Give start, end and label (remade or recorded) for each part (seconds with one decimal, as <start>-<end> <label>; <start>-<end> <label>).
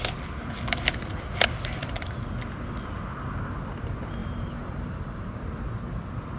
0.0-4.2 recorded; 4.2-5.3 remade; 5.3-6.4 recorded